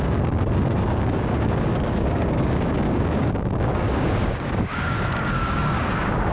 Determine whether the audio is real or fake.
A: fake